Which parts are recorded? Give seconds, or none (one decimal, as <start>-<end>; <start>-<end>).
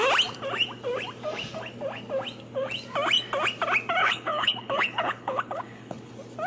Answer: 0.0-4.0; 6.1-6.5